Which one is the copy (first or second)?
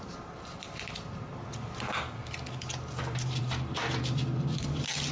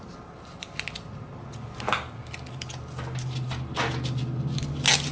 first